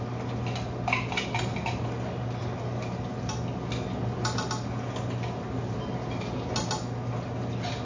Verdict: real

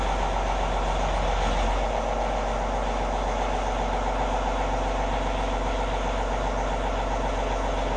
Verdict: real